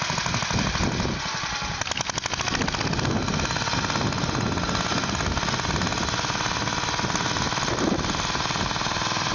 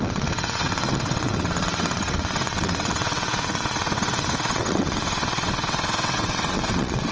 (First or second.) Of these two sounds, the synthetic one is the second